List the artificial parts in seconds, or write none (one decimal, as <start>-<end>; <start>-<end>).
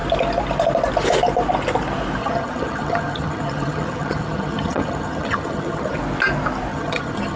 2.2-6.0; 6.7-7.4